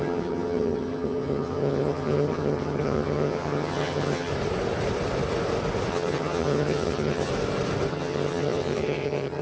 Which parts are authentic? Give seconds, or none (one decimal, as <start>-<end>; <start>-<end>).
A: 4.3-5.9; 7.3-7.9